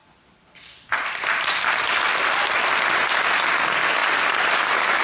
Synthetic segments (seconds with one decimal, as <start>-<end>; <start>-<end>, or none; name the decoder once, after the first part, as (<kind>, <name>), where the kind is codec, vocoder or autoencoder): 0.0-3.0 (vocoder, BigVGAN v2); 4.0-4.6